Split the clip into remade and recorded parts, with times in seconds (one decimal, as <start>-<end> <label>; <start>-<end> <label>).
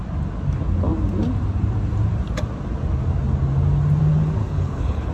0.0-4.4 recorded; 4.4-5.1 remade